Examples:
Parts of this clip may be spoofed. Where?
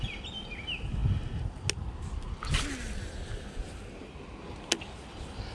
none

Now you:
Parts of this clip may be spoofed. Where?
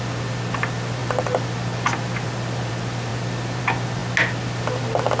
none